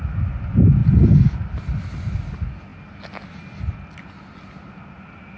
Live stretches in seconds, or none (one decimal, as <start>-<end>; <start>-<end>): 0.0-5.4